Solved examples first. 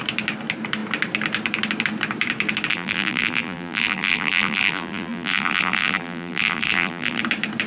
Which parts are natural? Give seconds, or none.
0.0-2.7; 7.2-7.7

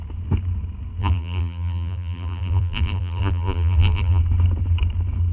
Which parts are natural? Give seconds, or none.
0.0-1.0; 4.2-5.3

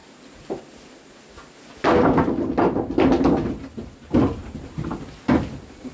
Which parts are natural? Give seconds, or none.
0.0-5.9

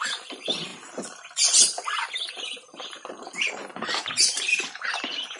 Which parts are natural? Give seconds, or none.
0.7-2.3

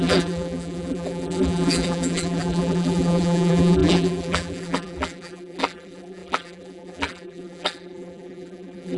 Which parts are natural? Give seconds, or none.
none

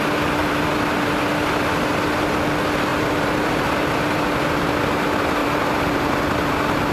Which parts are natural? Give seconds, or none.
0.0-0.4; 1.2-2.9; 4.0-5.4; 6.1-6.9